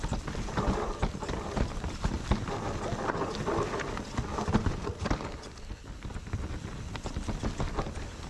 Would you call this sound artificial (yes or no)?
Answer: no